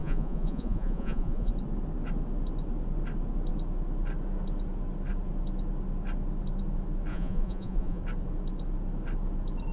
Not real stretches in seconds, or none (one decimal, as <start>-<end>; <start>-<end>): 0.0-1.5; 7.1-8.0